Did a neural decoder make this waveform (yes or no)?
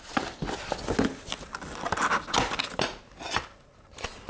no